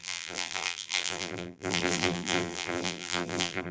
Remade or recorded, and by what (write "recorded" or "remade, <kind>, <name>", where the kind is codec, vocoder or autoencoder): remade, vocoder, BigVGAN v2